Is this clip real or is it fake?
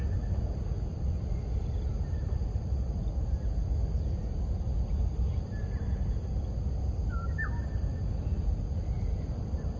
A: real